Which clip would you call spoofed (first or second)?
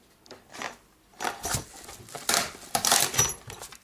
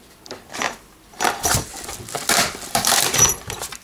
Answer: second